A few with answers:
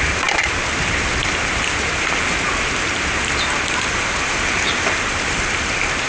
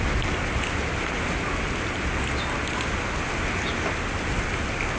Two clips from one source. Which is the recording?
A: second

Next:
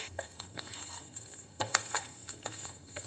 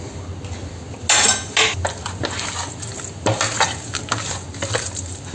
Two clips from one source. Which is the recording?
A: second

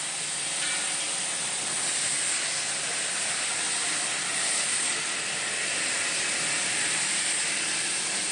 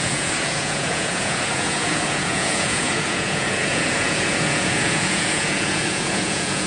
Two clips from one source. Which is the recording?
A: first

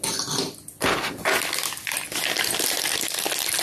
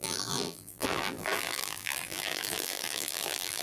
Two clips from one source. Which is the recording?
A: first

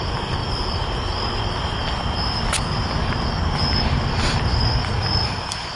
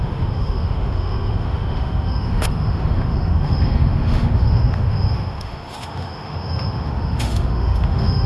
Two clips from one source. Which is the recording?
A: first